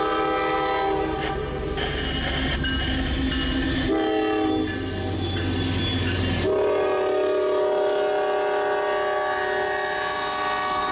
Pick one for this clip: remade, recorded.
recorded